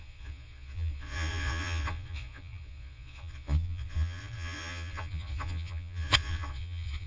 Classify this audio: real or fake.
fake